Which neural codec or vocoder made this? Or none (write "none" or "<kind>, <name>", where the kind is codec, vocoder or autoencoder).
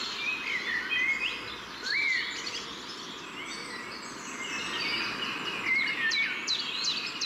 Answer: none